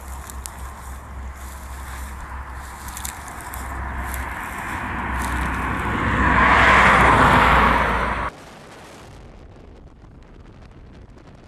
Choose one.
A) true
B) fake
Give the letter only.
A